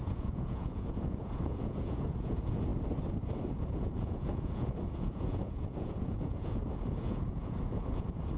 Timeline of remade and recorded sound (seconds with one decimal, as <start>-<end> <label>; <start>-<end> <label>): 0.0-2.7 remade; 2.7-3.5 recorded; 3.5-8.4 remade